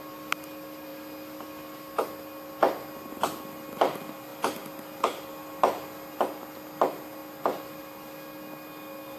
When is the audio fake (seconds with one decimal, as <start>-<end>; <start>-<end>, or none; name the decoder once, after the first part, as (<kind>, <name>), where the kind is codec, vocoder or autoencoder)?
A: none